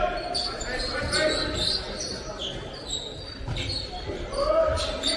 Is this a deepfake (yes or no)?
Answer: no